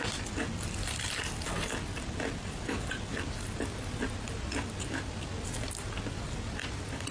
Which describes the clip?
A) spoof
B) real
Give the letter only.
B